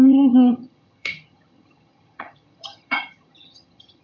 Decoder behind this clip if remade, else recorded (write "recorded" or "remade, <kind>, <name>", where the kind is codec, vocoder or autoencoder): remade, vocoder, HiFi-GAN